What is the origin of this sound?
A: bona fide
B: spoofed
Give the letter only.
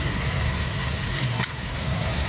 B